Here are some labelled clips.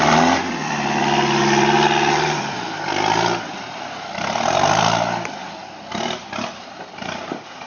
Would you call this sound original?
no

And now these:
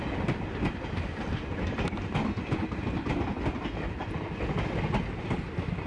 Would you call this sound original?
yes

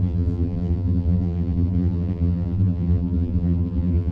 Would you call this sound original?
no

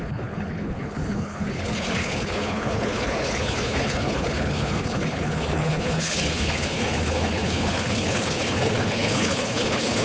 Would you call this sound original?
no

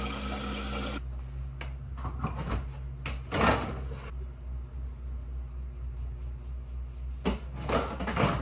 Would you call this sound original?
yes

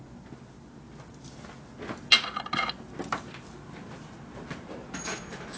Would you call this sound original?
yes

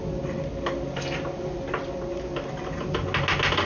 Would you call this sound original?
yes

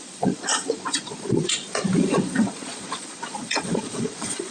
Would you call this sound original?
no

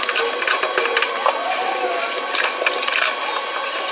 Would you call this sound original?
yes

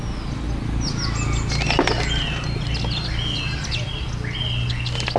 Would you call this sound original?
yes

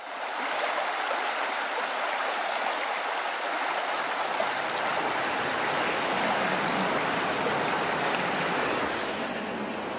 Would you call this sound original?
yes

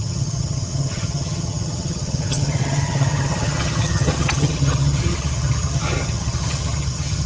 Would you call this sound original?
no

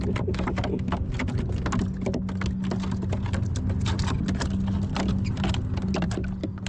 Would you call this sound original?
yes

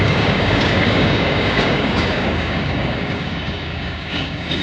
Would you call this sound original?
no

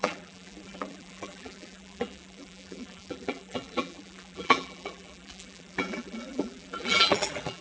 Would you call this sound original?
no